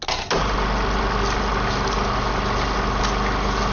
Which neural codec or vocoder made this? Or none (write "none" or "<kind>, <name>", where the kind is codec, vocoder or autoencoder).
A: none